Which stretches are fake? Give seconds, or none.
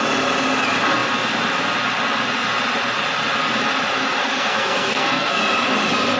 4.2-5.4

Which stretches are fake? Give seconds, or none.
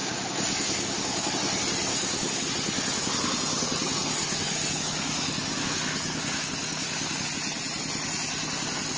0.0-1.3; 1.9-2.5; 4.2-7.3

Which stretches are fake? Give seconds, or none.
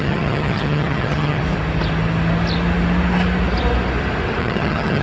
0.0-1.4; 4.4-5.0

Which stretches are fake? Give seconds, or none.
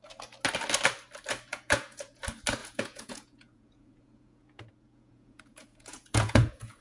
1.5-2.2; 2.6-6.8